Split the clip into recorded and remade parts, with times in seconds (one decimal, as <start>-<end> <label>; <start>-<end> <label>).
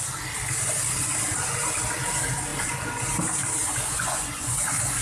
0.0-3.6 recorded; 3.6-5.0 remade